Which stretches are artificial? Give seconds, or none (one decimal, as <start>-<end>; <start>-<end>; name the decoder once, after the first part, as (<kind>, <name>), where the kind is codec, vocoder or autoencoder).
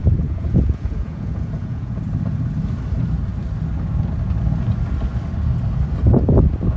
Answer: 0.0-2.0 (vocoder, Vocos)